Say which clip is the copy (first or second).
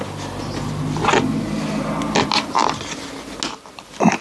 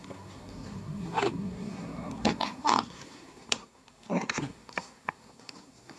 second